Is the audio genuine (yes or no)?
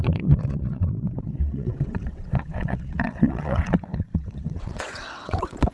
no